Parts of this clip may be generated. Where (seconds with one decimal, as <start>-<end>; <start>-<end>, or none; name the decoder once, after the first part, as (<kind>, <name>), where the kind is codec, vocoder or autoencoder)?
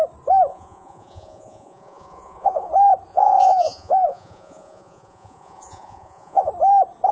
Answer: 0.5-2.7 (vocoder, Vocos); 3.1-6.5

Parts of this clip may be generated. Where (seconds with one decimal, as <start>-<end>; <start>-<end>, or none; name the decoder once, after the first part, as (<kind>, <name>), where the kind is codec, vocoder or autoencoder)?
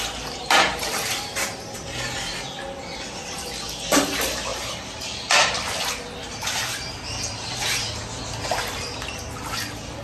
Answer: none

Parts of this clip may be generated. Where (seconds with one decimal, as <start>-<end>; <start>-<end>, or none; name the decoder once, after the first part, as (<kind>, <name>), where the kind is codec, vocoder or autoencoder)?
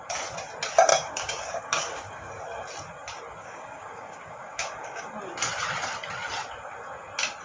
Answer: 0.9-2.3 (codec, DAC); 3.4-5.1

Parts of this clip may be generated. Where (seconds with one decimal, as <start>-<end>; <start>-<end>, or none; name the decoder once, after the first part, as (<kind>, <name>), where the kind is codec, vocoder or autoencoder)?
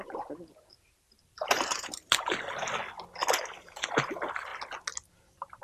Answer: 0.0-2.6 (vocoder, BigVGAN v2); 3.6-4.5; 5.1-5.6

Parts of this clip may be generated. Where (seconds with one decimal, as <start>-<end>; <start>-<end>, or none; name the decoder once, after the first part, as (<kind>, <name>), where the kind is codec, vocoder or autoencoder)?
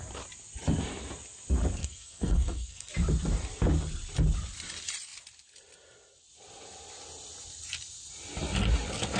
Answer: 1.8-2.9 (codec, SNAC)